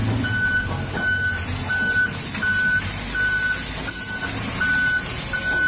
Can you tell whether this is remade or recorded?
recorded